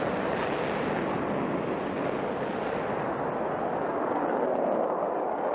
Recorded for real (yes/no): yes